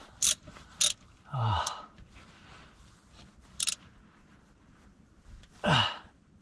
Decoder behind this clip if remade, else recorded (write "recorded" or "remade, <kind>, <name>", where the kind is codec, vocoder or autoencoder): recorded